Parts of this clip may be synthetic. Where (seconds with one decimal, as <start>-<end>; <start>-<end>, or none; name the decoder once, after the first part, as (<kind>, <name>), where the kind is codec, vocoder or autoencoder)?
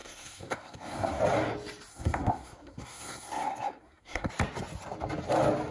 0.0-1.2 (codec, SNAC); 1.9-4.3